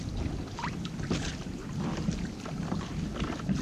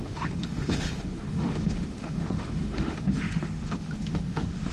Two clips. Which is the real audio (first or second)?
first